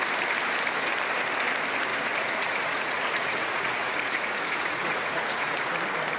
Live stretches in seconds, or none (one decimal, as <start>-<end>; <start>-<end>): 0.0-1.9; 5.6-6.2